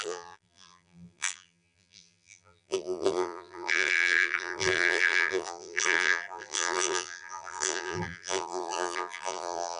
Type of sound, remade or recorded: remade